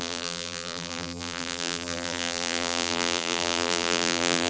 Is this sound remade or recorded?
remade